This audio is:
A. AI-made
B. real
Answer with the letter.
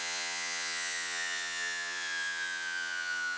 A